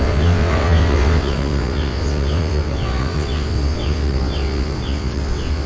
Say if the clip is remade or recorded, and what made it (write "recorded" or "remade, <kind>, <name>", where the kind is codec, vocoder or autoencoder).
remade, vocoder, WaveNeXt